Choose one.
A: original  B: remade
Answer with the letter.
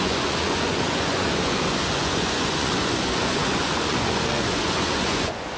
B